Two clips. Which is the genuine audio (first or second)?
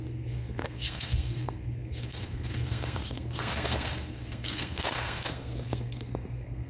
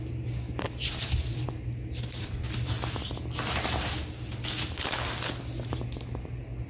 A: second